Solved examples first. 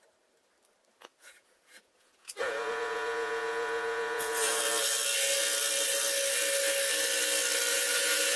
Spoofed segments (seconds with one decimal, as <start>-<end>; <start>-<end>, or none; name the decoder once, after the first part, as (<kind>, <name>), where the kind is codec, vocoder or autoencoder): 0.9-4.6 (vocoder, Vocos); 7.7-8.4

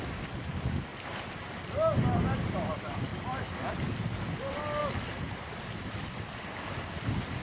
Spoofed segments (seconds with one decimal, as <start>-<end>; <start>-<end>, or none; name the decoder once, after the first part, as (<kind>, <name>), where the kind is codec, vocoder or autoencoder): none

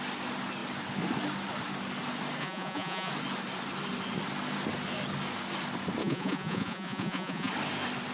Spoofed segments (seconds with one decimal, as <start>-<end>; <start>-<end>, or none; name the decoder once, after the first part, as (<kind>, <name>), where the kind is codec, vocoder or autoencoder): 2.4-3.1 (vocoder, Vocos); 6.0-7.5